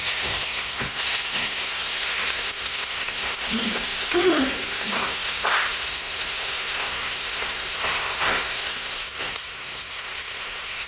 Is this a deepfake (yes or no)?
yes